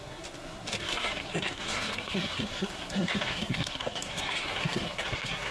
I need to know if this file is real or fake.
fake